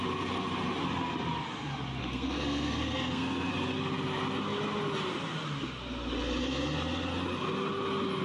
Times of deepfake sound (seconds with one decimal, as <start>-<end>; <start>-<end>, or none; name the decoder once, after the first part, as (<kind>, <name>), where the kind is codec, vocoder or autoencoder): 2.0-3.5 (codec, SNAC)